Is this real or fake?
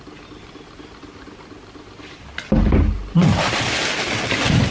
real